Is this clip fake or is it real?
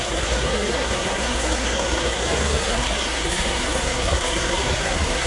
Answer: fake